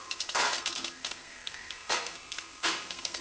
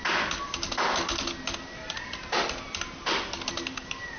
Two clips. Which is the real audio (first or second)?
second